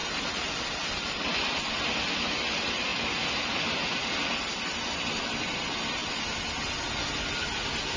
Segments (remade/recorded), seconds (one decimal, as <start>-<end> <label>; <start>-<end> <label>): 0.0-8.0 recorded